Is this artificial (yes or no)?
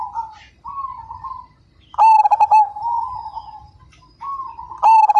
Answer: no